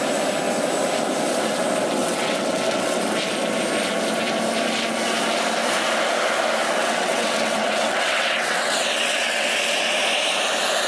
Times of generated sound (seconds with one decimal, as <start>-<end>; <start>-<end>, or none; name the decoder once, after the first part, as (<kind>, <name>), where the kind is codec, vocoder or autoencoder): 2.0-3.0 (vocoder, WaveNeXt); 6.8-9.5